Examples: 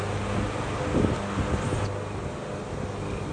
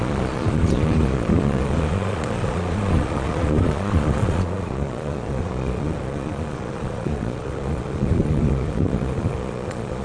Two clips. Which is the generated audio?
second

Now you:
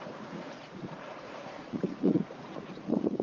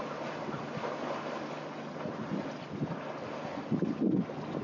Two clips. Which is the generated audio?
first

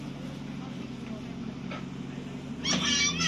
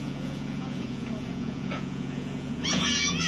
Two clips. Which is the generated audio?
second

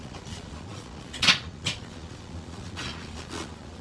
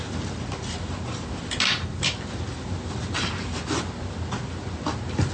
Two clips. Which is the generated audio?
first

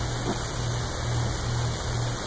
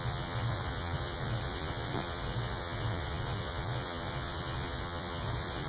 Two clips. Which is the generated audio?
second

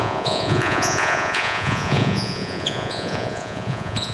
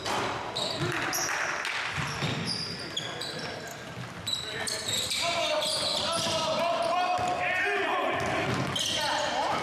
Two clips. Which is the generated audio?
first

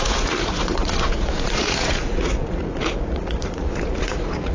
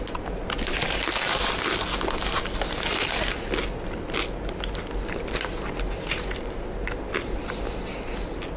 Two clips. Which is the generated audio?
first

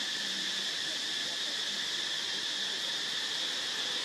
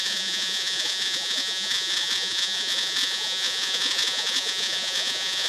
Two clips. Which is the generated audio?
second